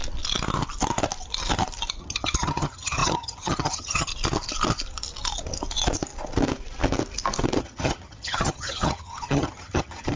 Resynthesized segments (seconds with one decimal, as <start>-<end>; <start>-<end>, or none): 2.0-4.1; 7.6-10.2